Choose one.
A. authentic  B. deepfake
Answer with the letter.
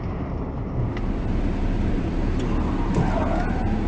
A